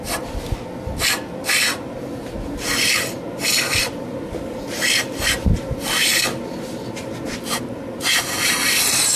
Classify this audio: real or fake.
real